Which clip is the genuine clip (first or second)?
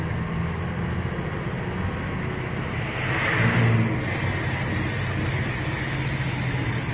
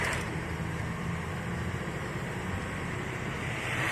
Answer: first